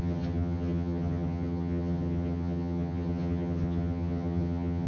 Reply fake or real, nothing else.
fake